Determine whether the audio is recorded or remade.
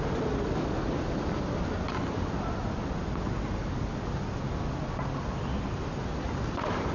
recorded